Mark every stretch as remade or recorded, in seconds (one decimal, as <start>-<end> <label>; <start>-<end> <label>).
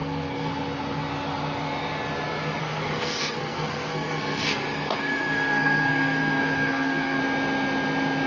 0.0-0.5 remade; 0.5-2.6 recorded; 2.6-7.2 remade; 7.2-8.3 recorded